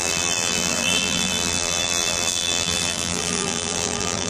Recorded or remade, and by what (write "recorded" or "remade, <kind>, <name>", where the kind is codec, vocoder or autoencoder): remade, vocoder, BigVGAN v2